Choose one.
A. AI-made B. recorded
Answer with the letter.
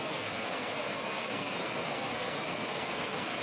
A